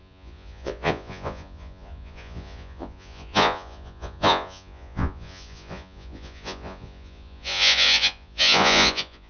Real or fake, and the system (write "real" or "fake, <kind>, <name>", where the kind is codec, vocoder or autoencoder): fake, vocoder, Vocos